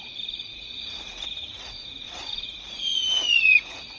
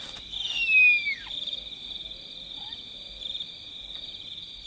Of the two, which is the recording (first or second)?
second